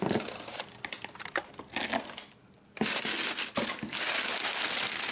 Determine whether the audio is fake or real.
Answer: real